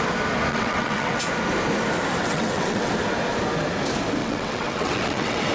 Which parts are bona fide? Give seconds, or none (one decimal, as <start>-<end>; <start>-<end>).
0.0-0.5; 1.2-2.2; 2.9-4.2